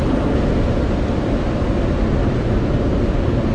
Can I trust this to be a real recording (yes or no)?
yes